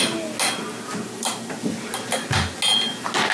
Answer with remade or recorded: recorded